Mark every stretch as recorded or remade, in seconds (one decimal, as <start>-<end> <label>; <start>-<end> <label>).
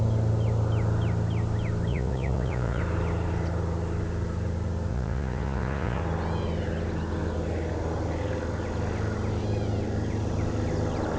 0.0-1.9 recorded; 1.9-2.8 remade; 2.8-4.9 recorded; 4.9-6.0 remade; 6.0-11.2 recorded